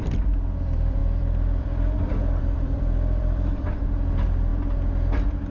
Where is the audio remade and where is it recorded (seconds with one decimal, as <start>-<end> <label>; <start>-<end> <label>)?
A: 0.0-4.5 remade; 4.5-5.5 recorded